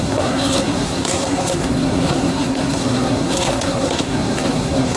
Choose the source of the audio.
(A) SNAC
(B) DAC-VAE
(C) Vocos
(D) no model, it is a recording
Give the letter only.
A